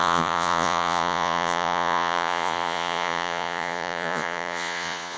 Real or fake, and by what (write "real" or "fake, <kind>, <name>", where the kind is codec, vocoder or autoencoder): fake, vocoder, Vocos